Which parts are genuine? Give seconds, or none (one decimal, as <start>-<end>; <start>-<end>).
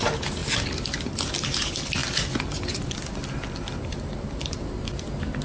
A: 0.0-5.4